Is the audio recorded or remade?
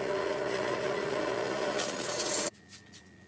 remade